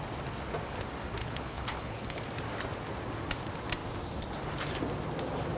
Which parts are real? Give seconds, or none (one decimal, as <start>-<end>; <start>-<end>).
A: 0.0-1.2; 2.2-5.6